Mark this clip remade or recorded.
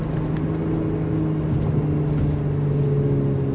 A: recorded